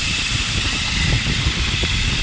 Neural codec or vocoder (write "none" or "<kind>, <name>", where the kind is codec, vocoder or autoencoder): none